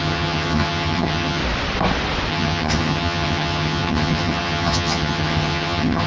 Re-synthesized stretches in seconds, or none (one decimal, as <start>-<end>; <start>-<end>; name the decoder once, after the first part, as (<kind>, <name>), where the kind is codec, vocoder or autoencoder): 0.0-1.4 (vocoder, HiFi-GAN); 2.3-6.1